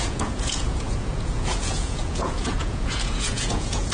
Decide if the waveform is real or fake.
fake